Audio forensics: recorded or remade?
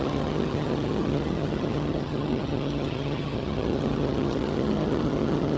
remade